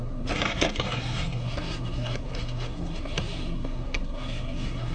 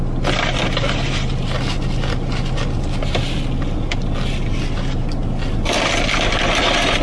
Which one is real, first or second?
second